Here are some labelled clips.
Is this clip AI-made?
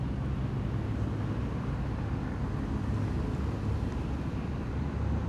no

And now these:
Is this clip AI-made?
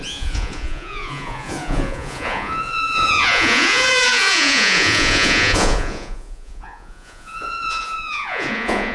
yes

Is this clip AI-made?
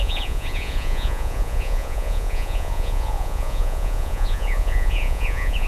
yes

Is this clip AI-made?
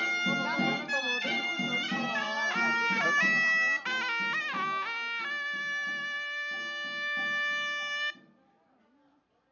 no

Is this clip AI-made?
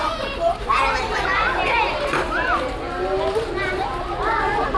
no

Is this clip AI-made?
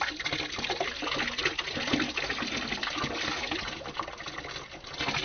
no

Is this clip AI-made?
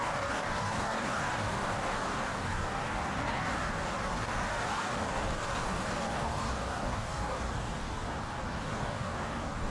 yes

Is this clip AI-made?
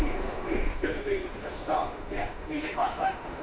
yes